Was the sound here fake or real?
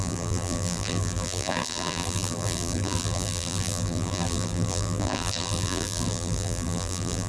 fake